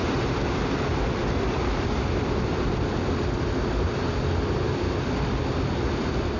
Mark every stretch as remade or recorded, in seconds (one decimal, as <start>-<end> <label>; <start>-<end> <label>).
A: 0.0-6.4 remade